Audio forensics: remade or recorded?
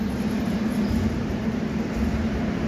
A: recorded